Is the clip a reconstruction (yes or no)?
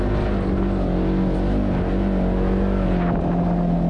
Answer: no